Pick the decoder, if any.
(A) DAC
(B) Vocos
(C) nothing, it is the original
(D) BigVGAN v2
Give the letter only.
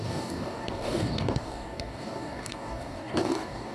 A